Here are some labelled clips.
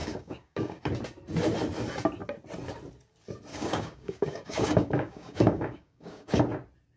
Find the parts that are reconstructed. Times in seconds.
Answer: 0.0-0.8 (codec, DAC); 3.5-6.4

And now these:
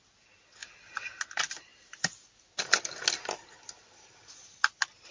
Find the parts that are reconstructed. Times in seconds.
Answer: none

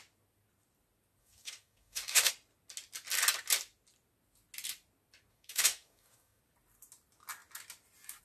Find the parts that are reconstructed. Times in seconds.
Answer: 1.2-2.3 (codec, DAC); 5.3-6.4